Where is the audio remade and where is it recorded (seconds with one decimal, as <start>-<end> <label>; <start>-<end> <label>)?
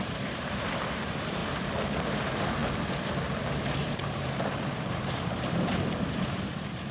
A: 0.0-1.4 remade; 1.4-2.2 recorded; 2.2-2.6 remade; 2.6-3.5 recorded; 3.5-6.9 remade